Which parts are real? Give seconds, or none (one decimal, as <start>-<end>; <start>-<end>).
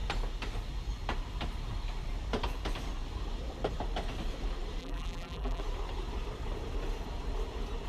0.0-4.8; 5.6-7.9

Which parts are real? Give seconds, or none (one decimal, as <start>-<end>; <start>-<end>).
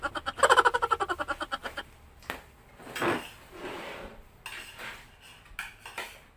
0.0-6.4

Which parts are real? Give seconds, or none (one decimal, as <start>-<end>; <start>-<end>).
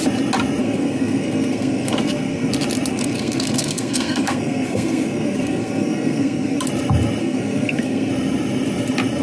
0.0-0.6; 2.5-2.9; 6.6-7.2; 8.1-9.2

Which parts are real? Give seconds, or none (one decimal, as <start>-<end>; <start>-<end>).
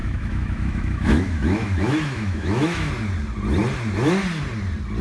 2.9-5.0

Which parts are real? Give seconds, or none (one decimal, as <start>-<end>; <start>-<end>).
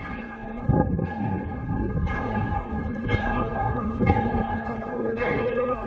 none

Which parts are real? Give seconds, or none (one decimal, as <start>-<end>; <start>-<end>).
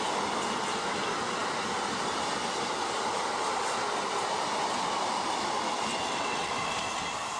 0.0-5.9; 6.5-7.4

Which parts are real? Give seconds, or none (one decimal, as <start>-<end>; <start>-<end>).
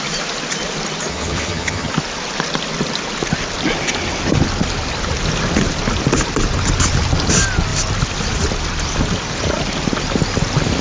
0.0-1.1; 1.9-10.8